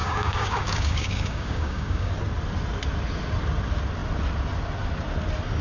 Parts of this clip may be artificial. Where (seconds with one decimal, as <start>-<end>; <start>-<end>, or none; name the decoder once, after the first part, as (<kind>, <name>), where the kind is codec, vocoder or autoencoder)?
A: 0.0-2.1 (codec, DAC)